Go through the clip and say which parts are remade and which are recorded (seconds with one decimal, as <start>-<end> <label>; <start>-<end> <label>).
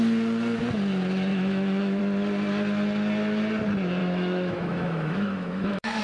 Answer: 0.0-1.3 recorded; 1.3-2.0 remade; 2.0-4.0 recorded; 4.0-6.0 remade